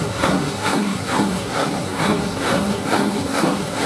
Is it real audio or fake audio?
fake